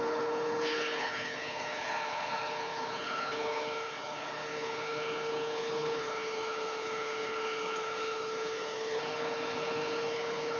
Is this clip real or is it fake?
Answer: fake